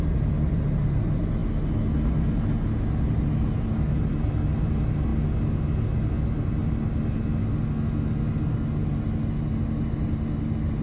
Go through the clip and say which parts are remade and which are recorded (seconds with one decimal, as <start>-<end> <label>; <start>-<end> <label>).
0.0-10.8 recorded